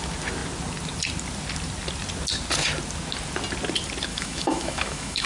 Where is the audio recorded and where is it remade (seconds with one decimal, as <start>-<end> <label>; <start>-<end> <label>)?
0.0-4.1 recorded; 4.1-5.3 remade